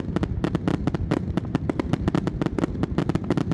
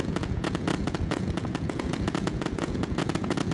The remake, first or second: second